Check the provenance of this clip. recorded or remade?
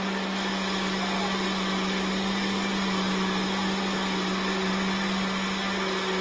recorded